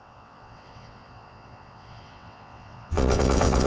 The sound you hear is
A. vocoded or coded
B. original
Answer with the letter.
A